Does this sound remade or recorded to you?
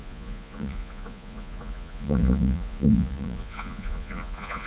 remade